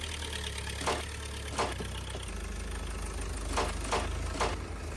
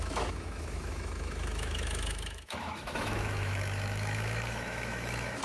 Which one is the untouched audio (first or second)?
first